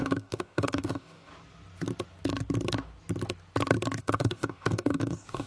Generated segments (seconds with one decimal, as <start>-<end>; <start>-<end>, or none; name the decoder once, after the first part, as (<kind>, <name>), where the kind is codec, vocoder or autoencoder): 0.0-1.3 (codec, DAC); 4.0-5.5